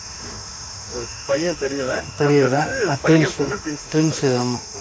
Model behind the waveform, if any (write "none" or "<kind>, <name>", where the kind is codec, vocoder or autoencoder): autoencoder, DAC-VAE